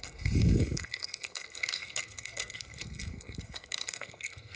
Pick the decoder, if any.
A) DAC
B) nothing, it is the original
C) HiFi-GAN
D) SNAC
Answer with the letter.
D